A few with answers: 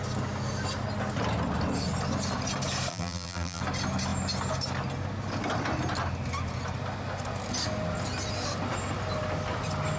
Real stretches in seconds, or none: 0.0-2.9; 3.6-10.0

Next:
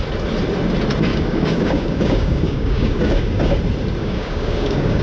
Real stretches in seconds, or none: 0.0-1.1; 3.6-4.0

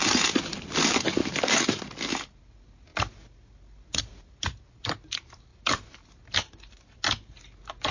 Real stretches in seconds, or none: 0.0-1.2; 1.8-7.9